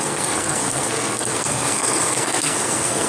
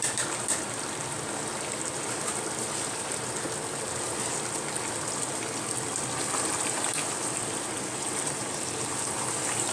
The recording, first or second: second